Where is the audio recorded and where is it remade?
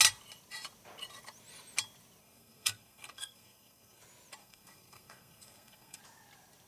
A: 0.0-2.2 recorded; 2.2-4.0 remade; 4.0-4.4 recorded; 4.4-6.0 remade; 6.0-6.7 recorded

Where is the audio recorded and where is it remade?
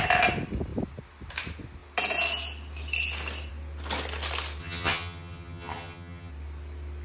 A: 0.0-4.6 recorded; 4.6-6.3 remade; 6.3-7.0 recorded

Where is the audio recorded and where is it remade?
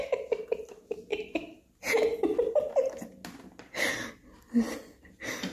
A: 0.0-5.5 recorded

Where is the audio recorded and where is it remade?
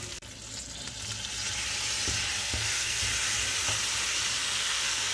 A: 0.0-2.4 recorded; 2.4-3.0 remade; 3.0-4.4 recorded; 4.4-5.1 remade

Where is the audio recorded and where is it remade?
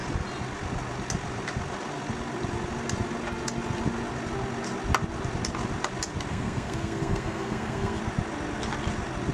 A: 0.0-6.3 recorded; 6.3-8.0 remade; 8.0-9.3 recorded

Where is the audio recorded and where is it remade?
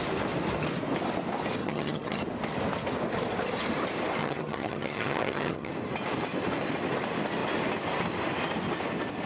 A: 0.0-1.6 recorded; 1.6-2.2 remade; 2.2-4.2 recorded; 4.2-5.7 remade; 5.7-9.3 recorded